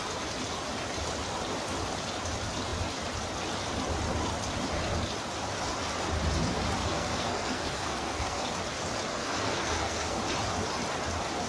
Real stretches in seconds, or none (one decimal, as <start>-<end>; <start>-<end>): 0.0-6.8; 8.5-9.1; 10.2-11.5